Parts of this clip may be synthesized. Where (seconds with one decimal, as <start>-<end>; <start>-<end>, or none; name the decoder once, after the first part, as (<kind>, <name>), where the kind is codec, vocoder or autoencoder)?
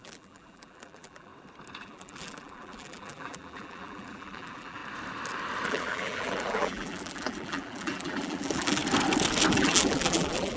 0.0-1.3 (vocoder, BigVGAN v2); 1.8-4.8; 5.7-8.8; 9.5-10.6